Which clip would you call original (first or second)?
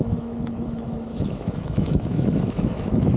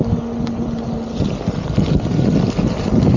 second